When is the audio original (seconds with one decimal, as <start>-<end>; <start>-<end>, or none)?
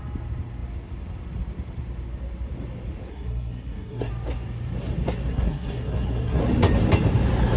0.0-3.1; 4.1-5.3; 6.4-7.6